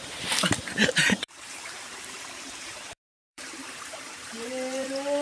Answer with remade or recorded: remade